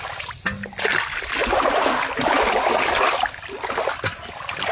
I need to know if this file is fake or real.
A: real